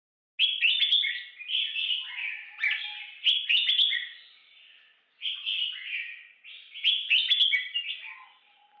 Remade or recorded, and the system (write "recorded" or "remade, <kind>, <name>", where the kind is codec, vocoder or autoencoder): recorded